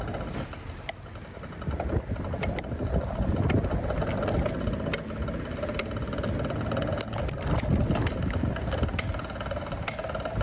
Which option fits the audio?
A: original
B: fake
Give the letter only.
A